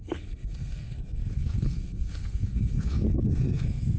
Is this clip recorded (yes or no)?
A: no